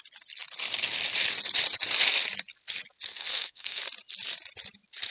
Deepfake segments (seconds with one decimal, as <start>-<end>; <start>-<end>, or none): 3.1-3.8